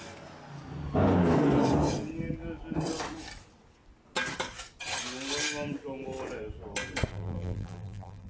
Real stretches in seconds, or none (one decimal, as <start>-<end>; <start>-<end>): 0.0-7.1